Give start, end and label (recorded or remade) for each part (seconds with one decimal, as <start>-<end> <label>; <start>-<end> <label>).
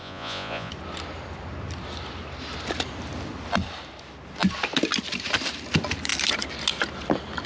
0.0-0.7 remade; 0.7-7.5 recorded